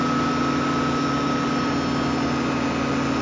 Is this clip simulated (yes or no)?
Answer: no